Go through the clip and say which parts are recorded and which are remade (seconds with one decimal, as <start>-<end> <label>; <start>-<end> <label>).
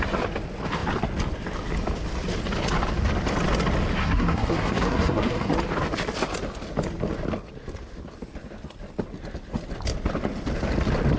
0.0-4.0 recorded; 4.0-5.5 remade; 5.5-11.2 recorded